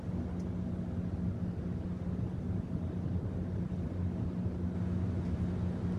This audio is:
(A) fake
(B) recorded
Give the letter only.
B